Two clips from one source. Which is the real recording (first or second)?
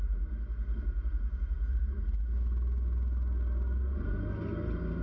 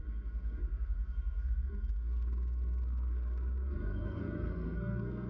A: first